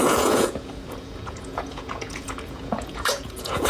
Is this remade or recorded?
remade